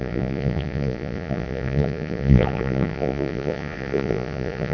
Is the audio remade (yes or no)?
yes